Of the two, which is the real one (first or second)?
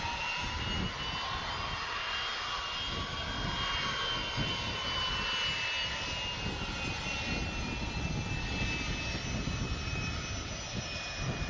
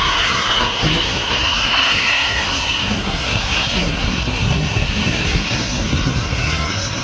first